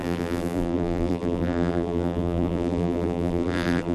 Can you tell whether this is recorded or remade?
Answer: remade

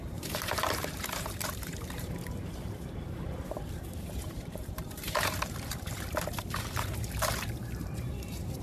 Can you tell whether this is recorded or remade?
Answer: remade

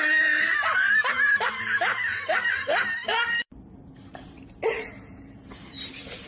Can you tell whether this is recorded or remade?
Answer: remade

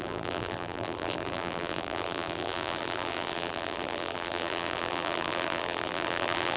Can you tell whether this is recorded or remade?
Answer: remade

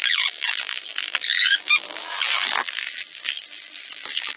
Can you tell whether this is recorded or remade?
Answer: remade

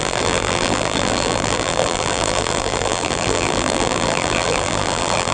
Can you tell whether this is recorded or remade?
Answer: remade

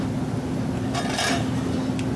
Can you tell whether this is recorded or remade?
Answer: recorded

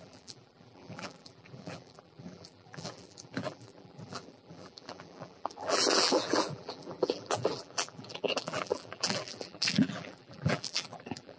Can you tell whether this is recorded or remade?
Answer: remade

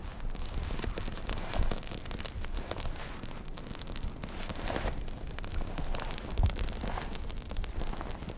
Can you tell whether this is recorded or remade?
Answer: recorded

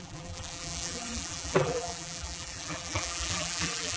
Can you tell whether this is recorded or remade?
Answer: remade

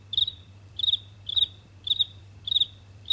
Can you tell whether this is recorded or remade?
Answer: remade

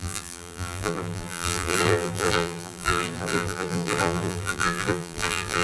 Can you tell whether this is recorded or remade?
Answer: remade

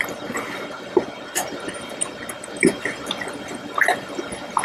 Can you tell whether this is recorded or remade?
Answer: remade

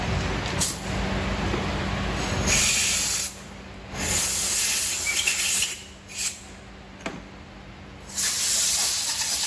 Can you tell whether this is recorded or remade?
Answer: recorded